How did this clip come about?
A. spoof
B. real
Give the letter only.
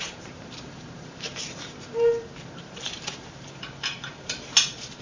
A